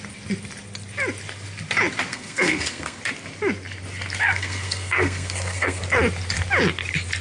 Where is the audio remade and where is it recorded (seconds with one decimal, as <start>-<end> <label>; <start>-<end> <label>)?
0.0-2.1 recorded; 2.1-3.0 remade; 3.0-4.2 recorded; 4.2-5.8 remade; 5.8-7.2 recorded